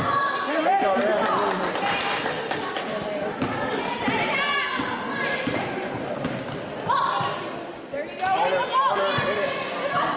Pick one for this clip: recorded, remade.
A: recorded